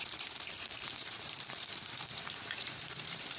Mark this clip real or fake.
fake